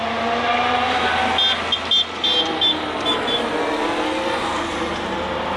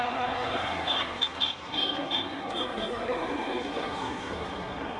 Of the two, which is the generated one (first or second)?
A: second